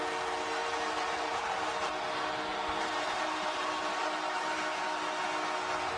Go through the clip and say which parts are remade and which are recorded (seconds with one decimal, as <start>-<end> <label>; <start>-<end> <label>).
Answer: 0.0-0.6 recorded; 0.6-1.4 remade; 1.4-2.5 recorded; 2.5-4.8 remade; 4.8-6.0 recorded